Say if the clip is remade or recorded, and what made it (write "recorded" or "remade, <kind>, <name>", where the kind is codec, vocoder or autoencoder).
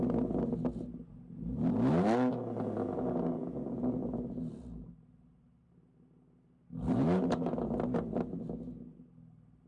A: recorded